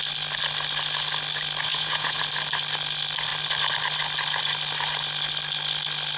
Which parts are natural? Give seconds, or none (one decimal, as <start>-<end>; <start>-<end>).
0.0-1.7; 2.2-6.2